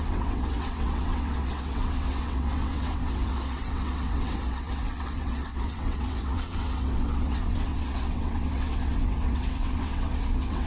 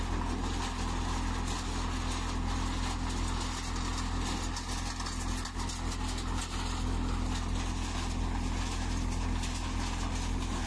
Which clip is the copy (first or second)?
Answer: first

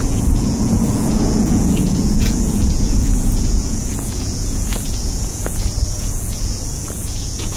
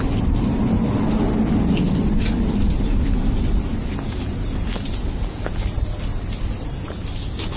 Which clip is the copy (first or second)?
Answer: first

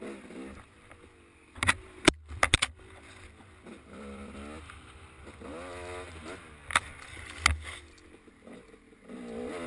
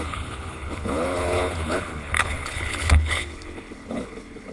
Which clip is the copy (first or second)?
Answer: second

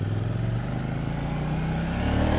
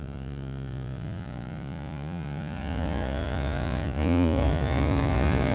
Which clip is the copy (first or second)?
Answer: second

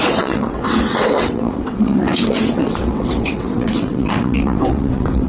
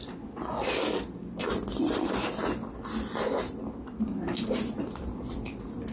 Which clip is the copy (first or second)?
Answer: first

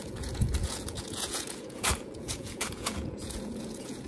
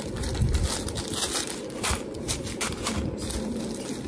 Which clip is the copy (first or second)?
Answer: first